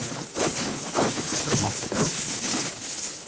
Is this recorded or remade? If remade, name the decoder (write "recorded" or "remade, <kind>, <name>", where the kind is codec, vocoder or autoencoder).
remade, codec, HILCodec